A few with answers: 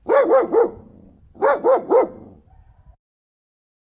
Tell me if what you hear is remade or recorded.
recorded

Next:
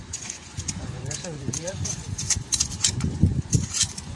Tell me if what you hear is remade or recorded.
remade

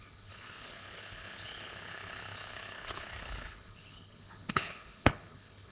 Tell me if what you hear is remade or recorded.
remade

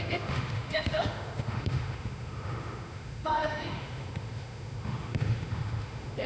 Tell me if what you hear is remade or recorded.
remade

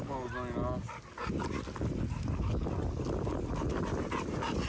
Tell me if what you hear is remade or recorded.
recorded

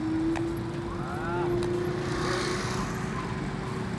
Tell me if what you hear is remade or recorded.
recorded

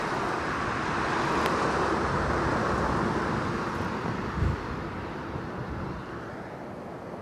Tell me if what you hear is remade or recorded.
recorded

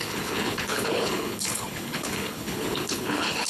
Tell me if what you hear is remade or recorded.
remade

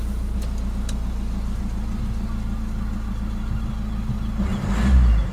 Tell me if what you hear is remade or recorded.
recorded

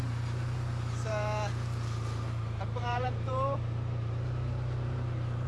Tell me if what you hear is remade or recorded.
remade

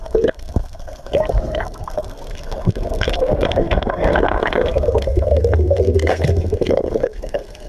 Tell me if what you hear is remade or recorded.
remade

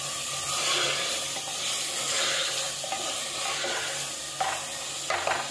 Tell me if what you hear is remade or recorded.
recorded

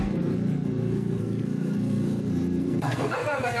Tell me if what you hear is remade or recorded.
remade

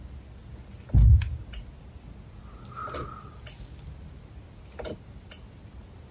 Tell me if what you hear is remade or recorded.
recorded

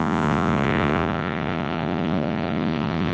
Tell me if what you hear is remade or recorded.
remade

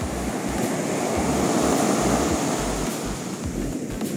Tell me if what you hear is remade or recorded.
recorded